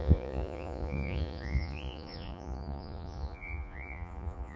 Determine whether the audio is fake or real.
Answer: fake